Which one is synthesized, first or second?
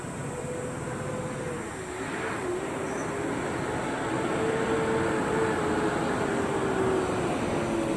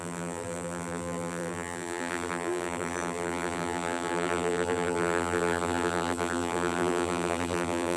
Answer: second